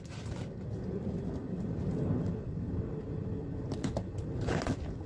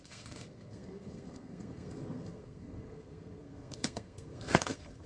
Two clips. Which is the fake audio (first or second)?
second